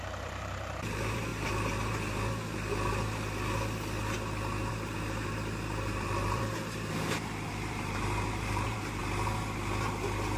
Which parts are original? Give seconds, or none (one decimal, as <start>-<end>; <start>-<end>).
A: 1.3-4.7; 9.0-10.4